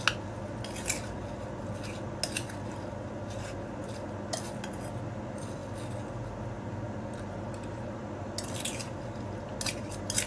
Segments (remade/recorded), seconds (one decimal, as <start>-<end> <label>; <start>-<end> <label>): 0.0-10.3 recorded